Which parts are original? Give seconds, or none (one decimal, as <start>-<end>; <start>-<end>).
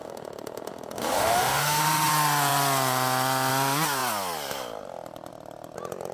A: 2.1-6.1